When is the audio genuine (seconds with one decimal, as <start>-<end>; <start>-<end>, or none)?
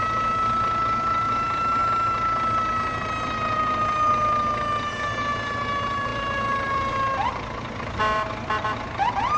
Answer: 0.0-9.4